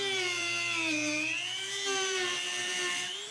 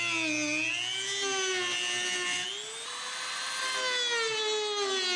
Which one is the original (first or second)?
second